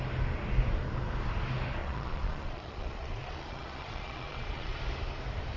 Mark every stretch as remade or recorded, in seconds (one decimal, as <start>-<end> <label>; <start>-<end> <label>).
0.0-1.8 recorded; 1.8-4.8 remade; 4.8-5.6 recorded